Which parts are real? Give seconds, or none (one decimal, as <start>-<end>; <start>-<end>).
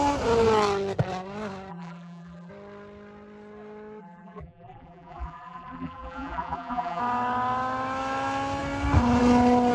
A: 0.0-1.7; 2.5-4.0; 7.0-9.7